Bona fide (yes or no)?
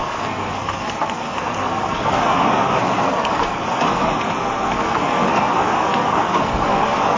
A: no